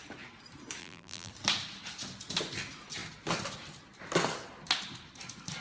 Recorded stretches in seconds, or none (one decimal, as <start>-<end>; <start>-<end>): 0.0-0.8; 1.3-5.6